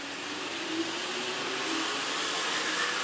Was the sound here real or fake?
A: real